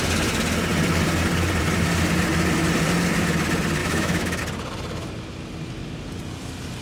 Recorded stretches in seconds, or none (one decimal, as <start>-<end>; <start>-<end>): 0.0-3.8; 4.4-6.8